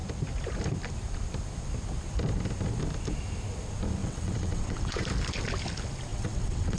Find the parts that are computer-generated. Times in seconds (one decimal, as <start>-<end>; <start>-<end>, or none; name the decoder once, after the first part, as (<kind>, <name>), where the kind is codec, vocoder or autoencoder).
4.0-5.0 (vocoder, WaveNeXt); 6.1-6.8